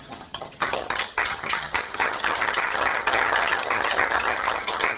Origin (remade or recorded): remade